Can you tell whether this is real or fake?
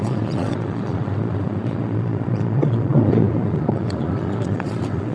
fake